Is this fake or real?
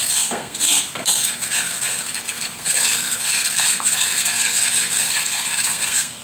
fake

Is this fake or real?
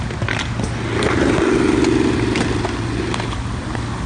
real